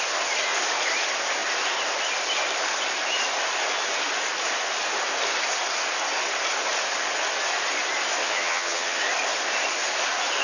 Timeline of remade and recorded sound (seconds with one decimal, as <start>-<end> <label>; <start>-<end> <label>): 0.0-8.2 recorded; 8.2-9.0 remade; 9.0-10.4 recorded